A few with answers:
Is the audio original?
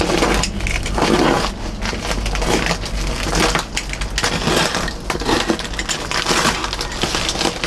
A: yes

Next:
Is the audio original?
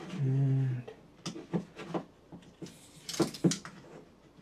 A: yes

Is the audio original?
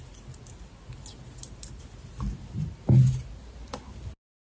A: yes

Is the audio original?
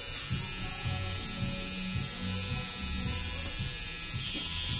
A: yes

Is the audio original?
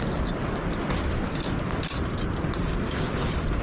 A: yes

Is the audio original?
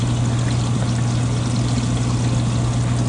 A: yes